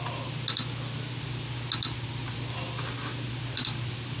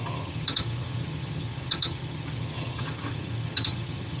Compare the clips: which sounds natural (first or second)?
first